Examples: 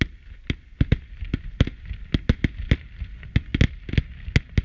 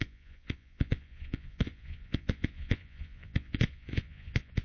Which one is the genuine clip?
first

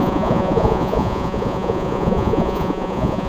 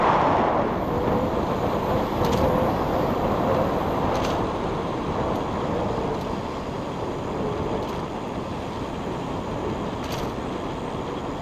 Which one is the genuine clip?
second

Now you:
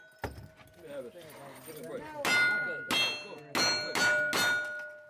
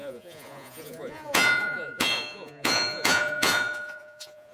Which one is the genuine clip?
first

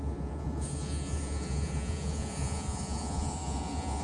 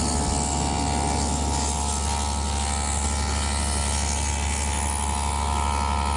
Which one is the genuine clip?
second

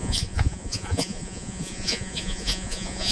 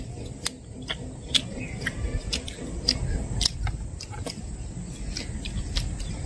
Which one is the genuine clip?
second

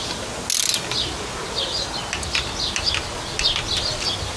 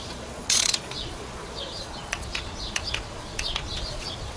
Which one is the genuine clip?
first